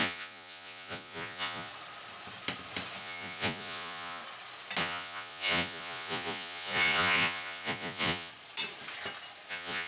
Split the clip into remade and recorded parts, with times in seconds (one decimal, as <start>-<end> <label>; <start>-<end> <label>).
0.0-1.7 remade; 1.7-3.0 recorded; 3.0-4.2 remade; 4.2-4.8 recorded; 4.8-8.3 remade; 8.3-9.5 recorded; 9.5-9.9 remade